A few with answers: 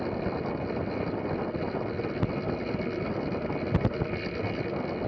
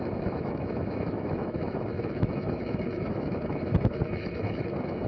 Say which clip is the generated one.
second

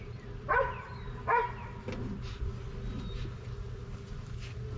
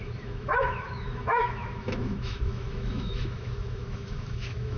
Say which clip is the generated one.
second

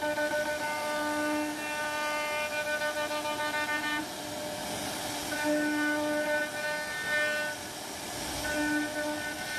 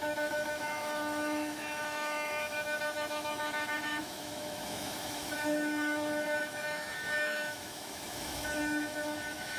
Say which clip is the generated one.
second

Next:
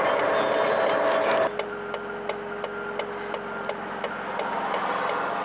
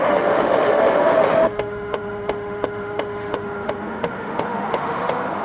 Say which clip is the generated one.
second